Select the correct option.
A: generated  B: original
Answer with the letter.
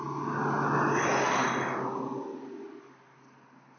B